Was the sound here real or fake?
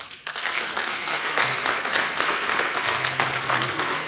fake